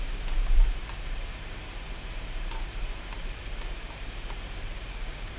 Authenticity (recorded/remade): remade